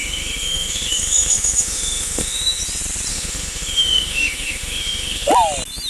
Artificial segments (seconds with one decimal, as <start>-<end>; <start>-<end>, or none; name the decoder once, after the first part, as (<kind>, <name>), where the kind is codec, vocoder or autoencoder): 0.0-2.6 (autoencoder, DAC-VAE); 3.1-5.3

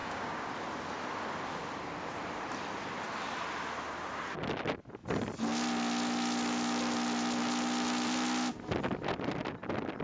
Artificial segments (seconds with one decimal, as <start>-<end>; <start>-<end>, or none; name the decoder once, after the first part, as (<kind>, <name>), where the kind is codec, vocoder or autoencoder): 0.0-0.5 (codec, DAC)

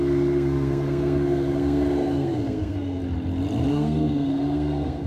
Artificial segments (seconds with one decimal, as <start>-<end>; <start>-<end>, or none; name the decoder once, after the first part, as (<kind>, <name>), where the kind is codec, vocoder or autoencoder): 0.0-3.0 (codec, SNAC); 3.7-5.1

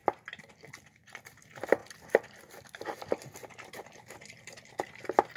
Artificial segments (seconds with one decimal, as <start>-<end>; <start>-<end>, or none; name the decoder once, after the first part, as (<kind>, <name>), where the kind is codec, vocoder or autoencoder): 1.8-4.7 (vocoder, BigVGAN v2)

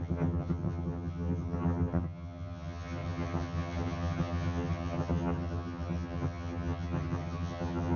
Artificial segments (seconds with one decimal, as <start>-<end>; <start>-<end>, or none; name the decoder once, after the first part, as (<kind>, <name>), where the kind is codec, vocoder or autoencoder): 0.0-8.0 (vocoder, HiFi-GAN)

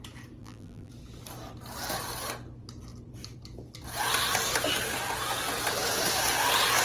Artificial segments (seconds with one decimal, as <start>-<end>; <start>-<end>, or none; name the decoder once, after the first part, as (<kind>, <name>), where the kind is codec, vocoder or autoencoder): 0.4-0.9 (vocoder, BigVGAN v2)

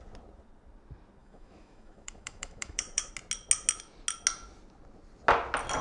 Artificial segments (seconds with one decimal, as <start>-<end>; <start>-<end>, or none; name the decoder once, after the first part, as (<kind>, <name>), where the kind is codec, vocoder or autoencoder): 1.2-3.1 (autoencoder, DAC-VAE)